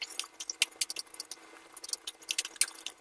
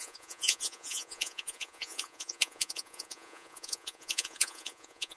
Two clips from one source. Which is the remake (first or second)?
second